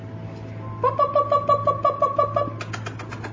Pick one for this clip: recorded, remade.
recorded